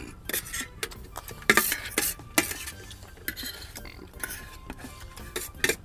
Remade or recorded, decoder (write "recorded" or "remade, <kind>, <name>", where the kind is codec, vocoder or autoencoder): recorded